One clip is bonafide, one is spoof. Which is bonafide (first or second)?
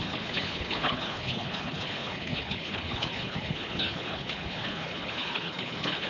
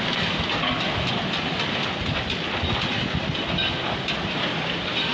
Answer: second